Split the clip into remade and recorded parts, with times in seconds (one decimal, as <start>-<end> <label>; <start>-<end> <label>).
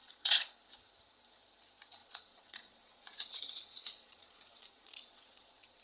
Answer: 0.0-0.5 remade; 0.5-2.0 recorded; 2.0-5.8 remade